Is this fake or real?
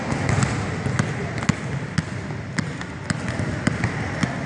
real